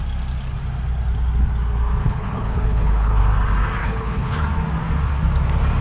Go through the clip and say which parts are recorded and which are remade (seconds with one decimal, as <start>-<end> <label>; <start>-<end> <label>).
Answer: 0.0-2.0 recorded; 2.0-3.2 remade; 3.2-3.8 recorded; 3.8-4.4 remade; 4.4-5.8 recorded